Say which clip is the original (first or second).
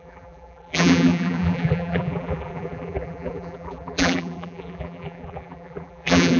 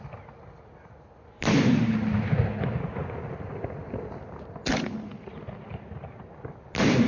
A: second